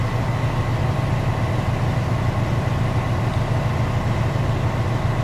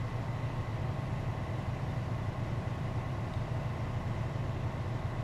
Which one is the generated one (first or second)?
second